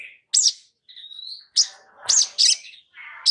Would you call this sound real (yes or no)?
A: yes